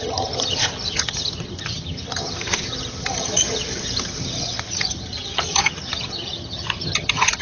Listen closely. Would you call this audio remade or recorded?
remade